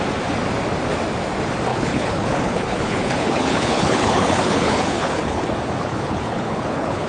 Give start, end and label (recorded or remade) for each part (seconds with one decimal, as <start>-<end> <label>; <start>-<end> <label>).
0.0-1.7 recorded; 1.7-5.4 remade; 5.4-5.9 recorded; 5.9-7.1 remade